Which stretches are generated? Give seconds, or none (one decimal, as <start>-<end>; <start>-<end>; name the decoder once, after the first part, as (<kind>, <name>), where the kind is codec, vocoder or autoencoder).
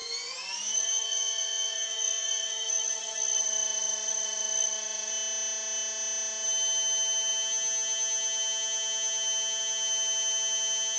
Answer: 0.0-5.1 (vocoder, Vocos)